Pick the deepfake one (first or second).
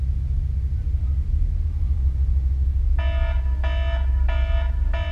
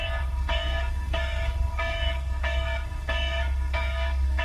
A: second